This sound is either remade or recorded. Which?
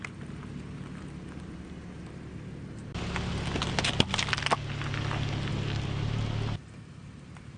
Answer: recorded